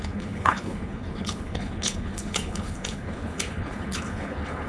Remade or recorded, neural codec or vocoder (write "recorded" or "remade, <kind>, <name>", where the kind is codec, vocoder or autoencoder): remade, codec, HILCodec